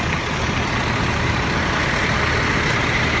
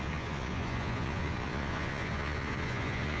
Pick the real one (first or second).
first